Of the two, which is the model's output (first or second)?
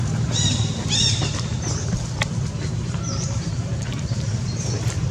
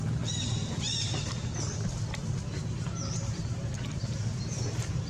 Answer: first